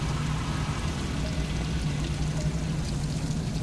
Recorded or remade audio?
recorded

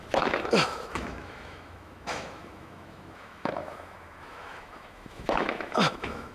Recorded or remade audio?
remade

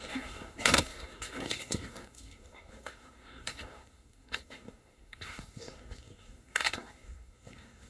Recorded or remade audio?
remade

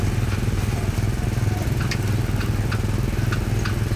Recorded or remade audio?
recorded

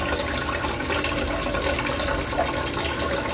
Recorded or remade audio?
recorded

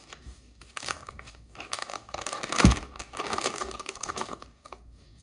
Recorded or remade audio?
remade